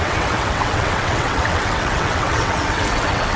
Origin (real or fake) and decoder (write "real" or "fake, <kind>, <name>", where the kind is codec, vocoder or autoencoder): fake, vocoder, WaveNeXt